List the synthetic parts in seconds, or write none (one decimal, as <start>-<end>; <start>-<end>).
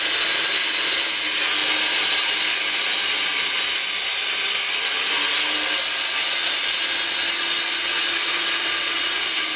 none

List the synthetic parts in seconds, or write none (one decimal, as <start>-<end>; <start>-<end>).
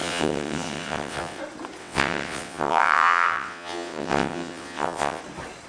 0.0-1.4; 1.8-5.2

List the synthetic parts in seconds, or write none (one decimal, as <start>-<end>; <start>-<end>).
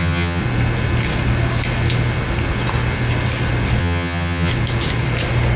0.0-0.4; 3.8-4.5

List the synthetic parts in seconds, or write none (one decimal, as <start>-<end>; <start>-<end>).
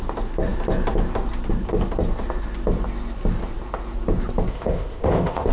4.5-5.5